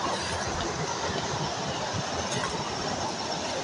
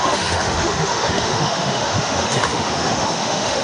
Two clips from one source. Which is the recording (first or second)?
first